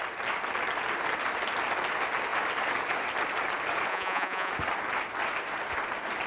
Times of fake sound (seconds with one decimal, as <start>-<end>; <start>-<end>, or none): 3.9-4.5